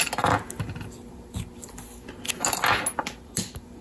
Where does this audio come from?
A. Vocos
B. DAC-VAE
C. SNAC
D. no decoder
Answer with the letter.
D